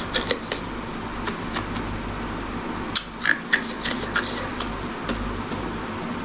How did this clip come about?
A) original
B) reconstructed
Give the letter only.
A